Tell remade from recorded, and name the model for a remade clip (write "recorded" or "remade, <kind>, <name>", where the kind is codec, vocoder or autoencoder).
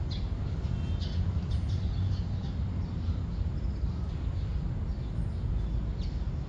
recorded